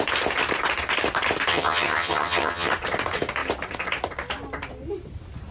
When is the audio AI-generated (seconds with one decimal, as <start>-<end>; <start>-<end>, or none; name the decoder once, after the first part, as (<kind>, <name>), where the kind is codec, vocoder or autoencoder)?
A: 1.5-2.7 (vocoder, HiFi-GAN)